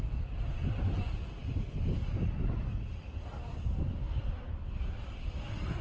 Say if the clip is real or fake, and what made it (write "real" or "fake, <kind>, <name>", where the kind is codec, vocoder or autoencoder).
real